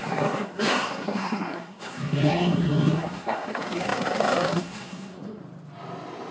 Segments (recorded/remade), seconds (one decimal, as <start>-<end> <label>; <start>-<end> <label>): 0.0-5.4 remade; 5.4-6.3 recorded